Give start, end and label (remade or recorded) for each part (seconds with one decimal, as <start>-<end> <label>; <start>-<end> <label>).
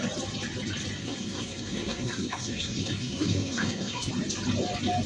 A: 0.0-1.0 recorded; 1.0-4.1 remade; 4.1-5.1 recorded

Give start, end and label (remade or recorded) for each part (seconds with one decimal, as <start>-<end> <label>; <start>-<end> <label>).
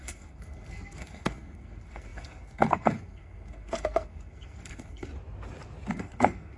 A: 0.0-5.1 remade; 5.1-5.9 recorded; 5.9-6.6 remade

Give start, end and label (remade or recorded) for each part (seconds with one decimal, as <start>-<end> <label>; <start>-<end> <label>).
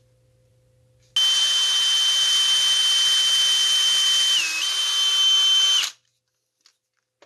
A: 0.0-7.3 recorded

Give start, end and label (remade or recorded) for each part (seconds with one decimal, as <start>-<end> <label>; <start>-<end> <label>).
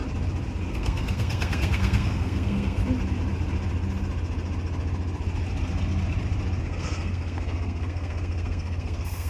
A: 0.0-0.6 recorded; 0.6-2.8 remade; 2.8-6.6 recorded; 6.6-9.3 remade